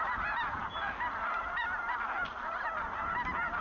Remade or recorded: recorded